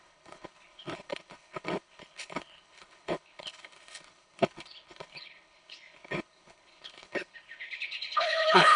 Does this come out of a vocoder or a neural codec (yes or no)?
yes